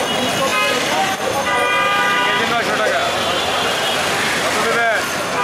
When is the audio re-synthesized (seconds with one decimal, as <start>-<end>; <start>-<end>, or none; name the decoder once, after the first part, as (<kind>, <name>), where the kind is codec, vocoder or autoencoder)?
none